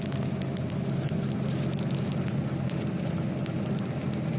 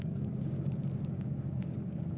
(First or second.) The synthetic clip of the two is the second